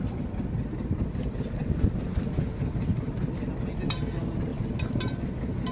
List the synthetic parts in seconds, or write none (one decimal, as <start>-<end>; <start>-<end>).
4.5-5.2